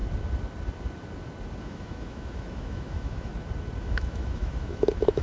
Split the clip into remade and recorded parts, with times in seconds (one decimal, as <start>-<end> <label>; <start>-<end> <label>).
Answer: 0.0-1.6 recorded; 1.6-3.3 remade; 3.3-3.8 recorded; 3.8-5.2 remade